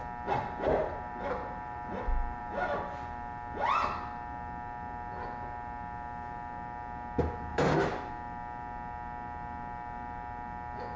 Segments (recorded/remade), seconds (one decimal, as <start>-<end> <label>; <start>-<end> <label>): 0.0-0.8 recorded; 0.8-2.5 remade; 2.5-7.5 recorded; 7.5-8.1 remade; 8.1-11.0 recorded